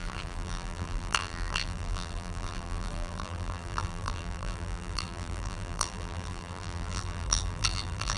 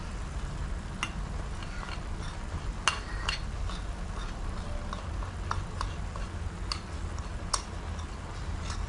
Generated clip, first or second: first